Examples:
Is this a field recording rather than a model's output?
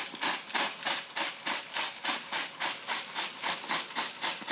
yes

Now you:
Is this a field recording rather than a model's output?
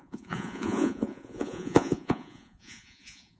no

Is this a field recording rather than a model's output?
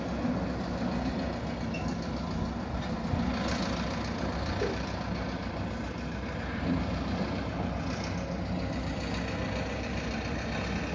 yes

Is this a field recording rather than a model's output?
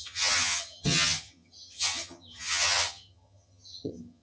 no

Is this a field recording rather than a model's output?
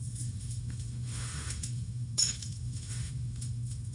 no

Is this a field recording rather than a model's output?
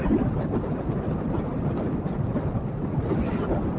yes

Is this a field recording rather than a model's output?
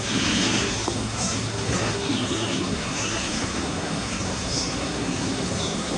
no